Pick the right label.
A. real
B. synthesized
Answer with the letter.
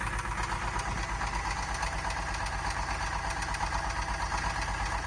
A